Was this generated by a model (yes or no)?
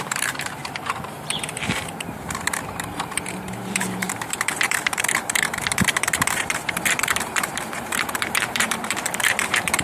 yes